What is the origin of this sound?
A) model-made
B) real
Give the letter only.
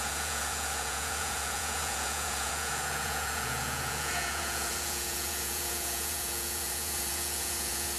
A